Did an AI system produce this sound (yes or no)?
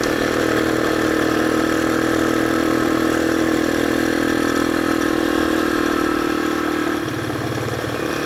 no